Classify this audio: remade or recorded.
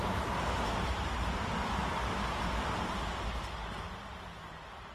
recorded